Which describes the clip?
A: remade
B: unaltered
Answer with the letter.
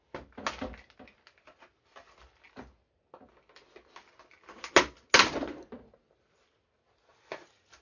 B